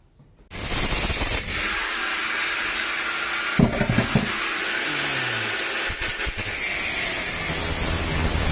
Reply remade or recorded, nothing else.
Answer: recorded